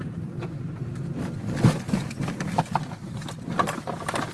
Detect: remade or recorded recorded